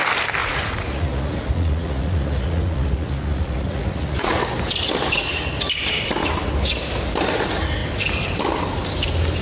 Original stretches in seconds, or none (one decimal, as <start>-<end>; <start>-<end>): 0.0-0.4; 4.4-9.4